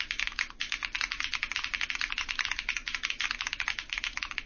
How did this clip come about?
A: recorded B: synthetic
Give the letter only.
A